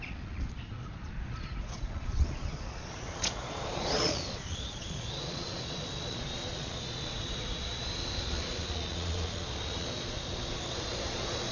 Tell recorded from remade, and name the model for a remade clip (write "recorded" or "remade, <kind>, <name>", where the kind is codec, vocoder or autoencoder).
remade, vocoder, Vocos